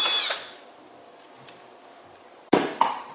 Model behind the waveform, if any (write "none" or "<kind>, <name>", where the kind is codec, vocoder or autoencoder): none